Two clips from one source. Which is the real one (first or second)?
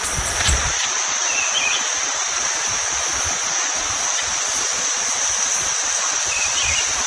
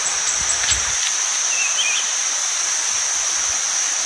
second